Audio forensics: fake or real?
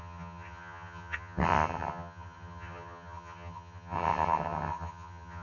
fake